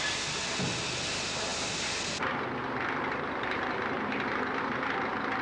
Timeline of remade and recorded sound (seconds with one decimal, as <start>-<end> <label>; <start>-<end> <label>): 0.0-5.4 recorded